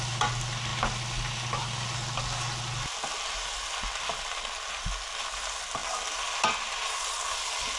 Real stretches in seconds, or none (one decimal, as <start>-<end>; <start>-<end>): 0.0-7.8